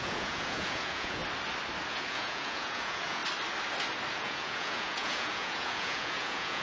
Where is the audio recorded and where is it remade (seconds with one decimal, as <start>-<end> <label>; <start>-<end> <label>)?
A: 0.0-1.2 remade; 1.2-1.9 recorded; 1.9-3.2 remade; 3.2-4.1 recorded; 4.1-6.6 remade